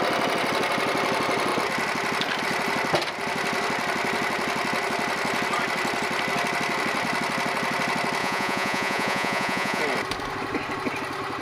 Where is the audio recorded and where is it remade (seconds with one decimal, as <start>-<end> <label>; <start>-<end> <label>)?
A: 0.0-8.2 recorded; 8.2-9.8 remade; 9.8-11.4 recorded